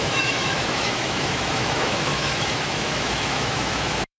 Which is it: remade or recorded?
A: remade